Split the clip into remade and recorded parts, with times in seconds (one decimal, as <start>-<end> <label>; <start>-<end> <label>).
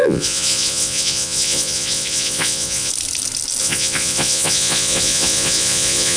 0.0-2.9 remade; 2.9-3.6 recorded; 3.6-6.2 remade